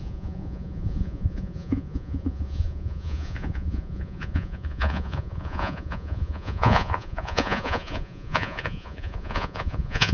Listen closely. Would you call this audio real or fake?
fake